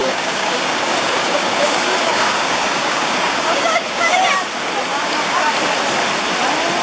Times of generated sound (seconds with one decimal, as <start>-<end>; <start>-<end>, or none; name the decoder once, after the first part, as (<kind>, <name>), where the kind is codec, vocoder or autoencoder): 0.0-4.1 (codec, DAC); 4.9-5.5